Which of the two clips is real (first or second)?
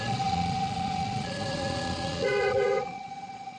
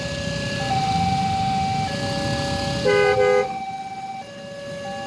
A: second